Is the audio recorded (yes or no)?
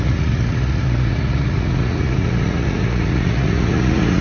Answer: no